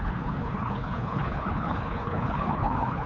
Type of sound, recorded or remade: remade